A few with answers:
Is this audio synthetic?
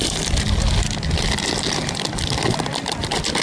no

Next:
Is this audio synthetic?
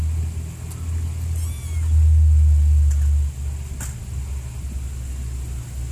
no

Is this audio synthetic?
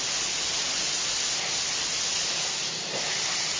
no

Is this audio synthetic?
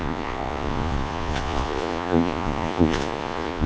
yes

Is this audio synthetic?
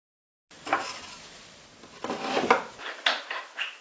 no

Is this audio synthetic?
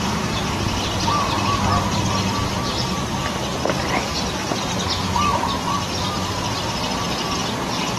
no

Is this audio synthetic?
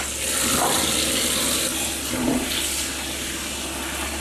no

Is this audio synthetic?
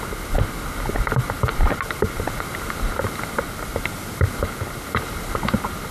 no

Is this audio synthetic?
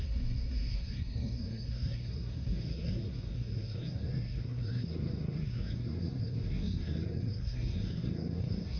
yes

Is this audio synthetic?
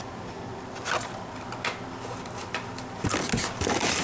no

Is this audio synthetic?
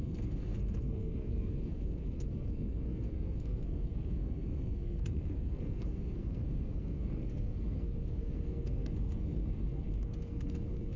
yes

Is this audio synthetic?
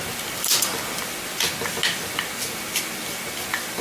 no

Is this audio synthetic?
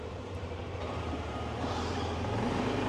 yes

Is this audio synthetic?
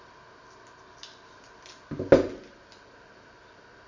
no